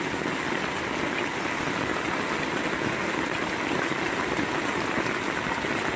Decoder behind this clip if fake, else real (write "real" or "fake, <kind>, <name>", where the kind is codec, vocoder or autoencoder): real